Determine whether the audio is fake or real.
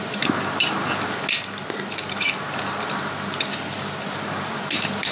real